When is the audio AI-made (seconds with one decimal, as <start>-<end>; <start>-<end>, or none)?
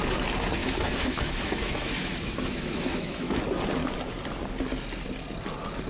0.6-3.4